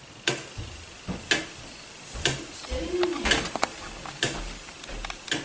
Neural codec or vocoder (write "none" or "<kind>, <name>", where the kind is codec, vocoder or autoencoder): none